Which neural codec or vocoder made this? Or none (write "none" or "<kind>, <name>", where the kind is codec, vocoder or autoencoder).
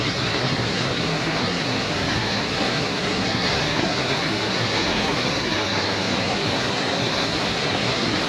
codec, SNAC